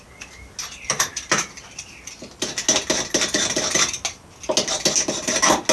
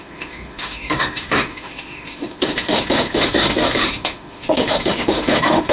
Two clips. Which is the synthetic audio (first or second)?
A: second